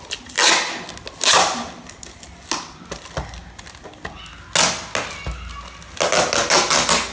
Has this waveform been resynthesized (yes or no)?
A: no